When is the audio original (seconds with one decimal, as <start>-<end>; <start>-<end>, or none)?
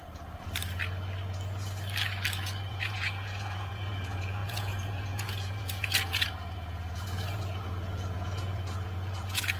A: 0.0-2.7